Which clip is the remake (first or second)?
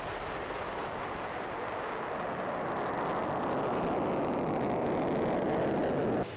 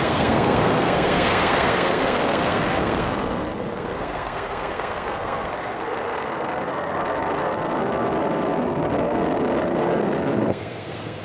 second